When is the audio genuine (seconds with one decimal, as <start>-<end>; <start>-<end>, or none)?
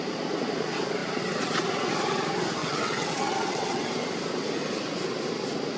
0.0-2.6; 3.9-5.8